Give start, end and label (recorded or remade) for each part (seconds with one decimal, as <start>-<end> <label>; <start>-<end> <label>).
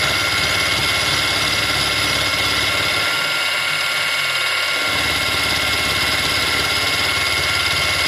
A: 0.0-8.1 recorded